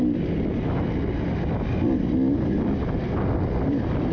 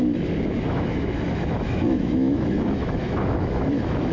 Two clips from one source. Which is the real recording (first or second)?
first